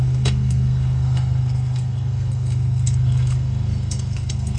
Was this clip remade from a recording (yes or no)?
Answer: yes